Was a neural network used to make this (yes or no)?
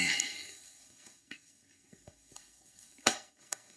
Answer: yes